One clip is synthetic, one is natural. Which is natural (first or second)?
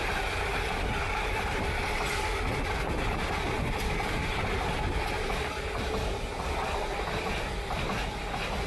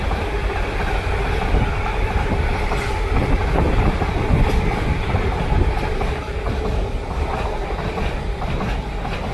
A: first